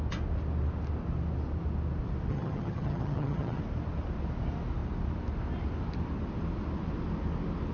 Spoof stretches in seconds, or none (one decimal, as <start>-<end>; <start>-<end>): 2.3-3.6